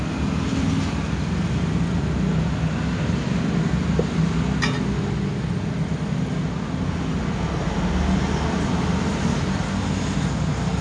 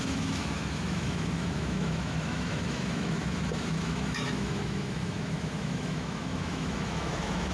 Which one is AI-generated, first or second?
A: second